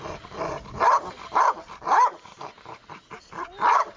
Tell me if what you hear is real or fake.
real